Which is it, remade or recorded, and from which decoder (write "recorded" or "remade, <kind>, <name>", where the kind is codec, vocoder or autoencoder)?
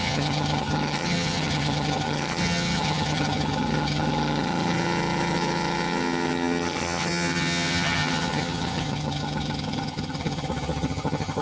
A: remade, vocoder, HiFi-GAN